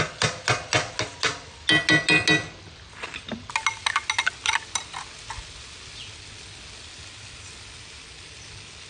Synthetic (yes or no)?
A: no